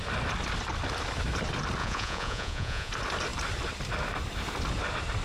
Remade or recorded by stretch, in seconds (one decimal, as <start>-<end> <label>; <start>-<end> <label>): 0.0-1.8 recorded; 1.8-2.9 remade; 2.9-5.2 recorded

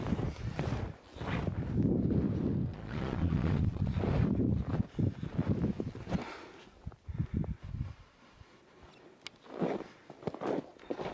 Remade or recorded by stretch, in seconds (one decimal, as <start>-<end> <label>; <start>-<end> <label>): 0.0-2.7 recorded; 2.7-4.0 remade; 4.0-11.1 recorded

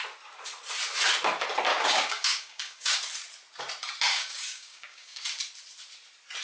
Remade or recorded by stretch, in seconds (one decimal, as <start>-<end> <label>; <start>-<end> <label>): 0.0-1.7 recorded; 1.7-3.0 remade; 3.0-4.1 recorded; 4.1-5.2 remade; 5.2-6.4 recorded

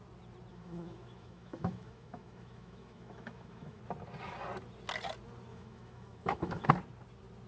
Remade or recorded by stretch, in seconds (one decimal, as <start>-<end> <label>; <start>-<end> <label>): 0.0-0.5 recorded; 0.5-3.8 remade; 3.8-5.5 recorded; 5.5-6.7 remade; 6.7-7.5 recorded